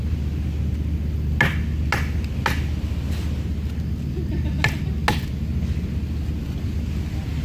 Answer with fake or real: real